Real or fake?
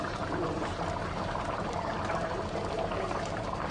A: fake